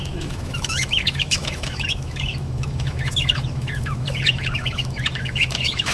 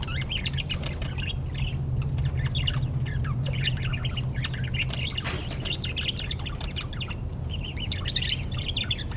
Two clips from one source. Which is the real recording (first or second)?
second